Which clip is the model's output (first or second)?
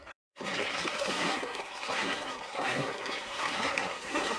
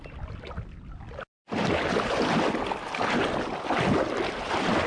first